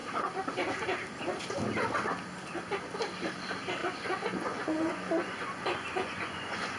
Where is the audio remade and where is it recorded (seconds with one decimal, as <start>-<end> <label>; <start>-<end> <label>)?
0.0-3.8 recorded; 3.8-6.8 remade